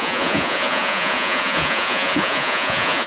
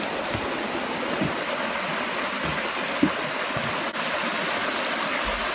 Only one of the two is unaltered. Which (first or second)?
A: second